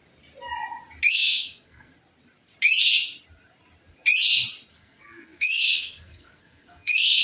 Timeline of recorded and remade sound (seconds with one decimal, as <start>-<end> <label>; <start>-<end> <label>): 0.0-1.1 recorded; 1.1-1.9 remade; 1.9-4.7 recorded; 4.7-7.2 remade